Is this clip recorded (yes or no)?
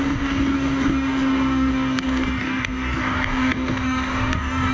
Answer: no